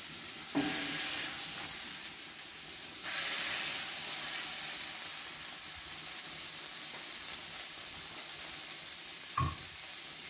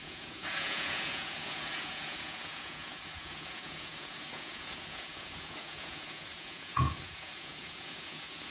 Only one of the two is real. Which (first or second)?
first